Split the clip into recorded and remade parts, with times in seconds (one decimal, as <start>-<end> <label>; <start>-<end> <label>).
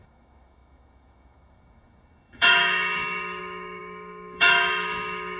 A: 0.0-5.4 remade